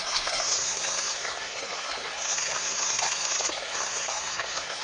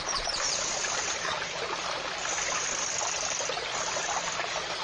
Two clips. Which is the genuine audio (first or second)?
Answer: second